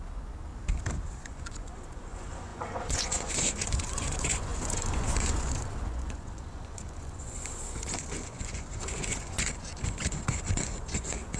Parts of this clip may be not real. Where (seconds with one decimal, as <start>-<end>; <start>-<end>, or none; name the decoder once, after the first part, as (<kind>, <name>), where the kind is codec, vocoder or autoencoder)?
0.0-0.5 (vocoder, Vocos); 1.2-11.4

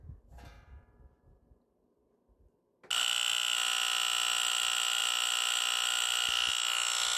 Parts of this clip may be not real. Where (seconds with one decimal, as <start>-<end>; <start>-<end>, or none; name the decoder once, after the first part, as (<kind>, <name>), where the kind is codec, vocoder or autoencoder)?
none

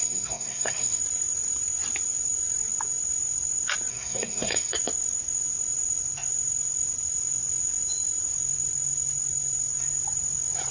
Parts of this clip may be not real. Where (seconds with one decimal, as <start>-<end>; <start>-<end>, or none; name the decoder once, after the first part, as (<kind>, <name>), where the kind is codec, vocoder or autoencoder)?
0.0-1.0 (codec, SNAC); 3.9-4.7